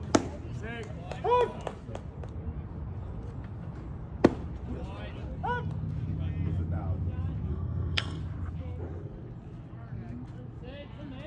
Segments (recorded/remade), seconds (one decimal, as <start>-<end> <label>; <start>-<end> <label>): 0.0-7.5 recorded; 7.5-8.2 remade; 8.2-11.3 recorded